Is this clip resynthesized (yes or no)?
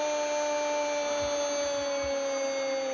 no